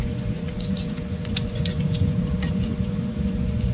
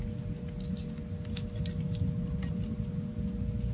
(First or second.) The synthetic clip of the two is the first